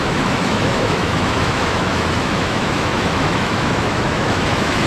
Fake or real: fake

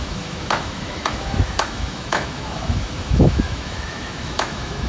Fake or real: fake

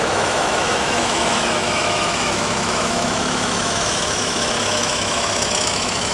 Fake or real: fake